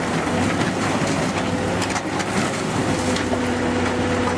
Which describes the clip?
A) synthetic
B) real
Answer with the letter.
B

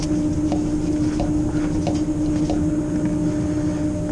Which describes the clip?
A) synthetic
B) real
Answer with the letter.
B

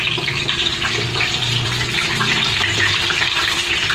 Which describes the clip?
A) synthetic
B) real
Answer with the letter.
A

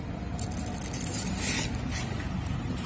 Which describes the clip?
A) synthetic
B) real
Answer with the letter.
B